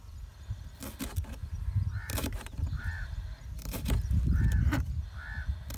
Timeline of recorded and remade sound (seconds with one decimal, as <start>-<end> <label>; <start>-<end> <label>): 0.0-1.4 recorded; 1.4-4.9 remade; 4.9-5.8 recorded